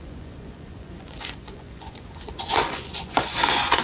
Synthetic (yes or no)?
yes